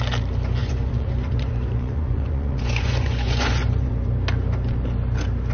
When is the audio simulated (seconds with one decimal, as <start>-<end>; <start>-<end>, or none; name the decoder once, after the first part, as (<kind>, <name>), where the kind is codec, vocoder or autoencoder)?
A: 0.6-3.9 (vocoder, Vocos)